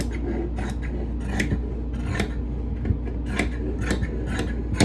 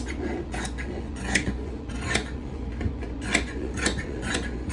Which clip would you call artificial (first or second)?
second